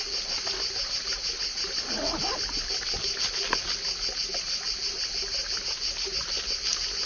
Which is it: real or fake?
real